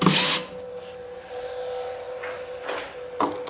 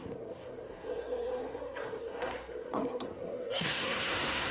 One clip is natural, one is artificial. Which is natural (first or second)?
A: first